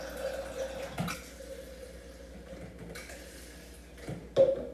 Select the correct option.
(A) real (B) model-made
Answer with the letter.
A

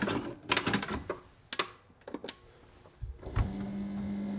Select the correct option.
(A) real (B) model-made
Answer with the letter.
A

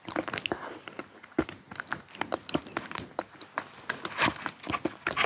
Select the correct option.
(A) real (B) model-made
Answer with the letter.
A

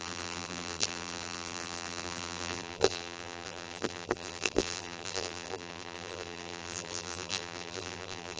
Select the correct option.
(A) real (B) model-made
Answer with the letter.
B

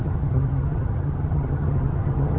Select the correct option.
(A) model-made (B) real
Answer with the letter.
A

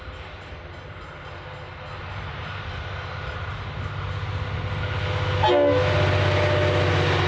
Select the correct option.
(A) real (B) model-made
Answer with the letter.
A